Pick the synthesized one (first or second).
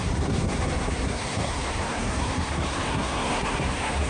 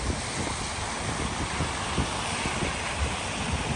first